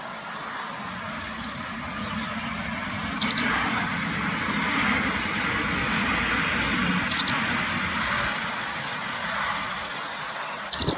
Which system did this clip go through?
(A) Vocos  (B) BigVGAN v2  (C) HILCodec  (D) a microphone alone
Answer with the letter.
D